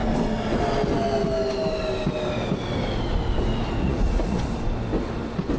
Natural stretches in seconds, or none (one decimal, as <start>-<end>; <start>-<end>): 0.0-3.8; 4.4-5.6